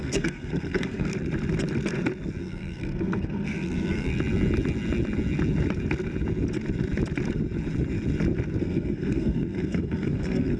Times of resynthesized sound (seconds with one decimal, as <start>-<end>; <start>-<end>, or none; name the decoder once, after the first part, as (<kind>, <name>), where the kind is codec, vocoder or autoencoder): 0.0-1.1 (codec, SNAC); 2.4-4.1; 8.6-10.6